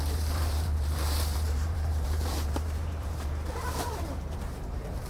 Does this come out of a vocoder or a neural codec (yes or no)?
yes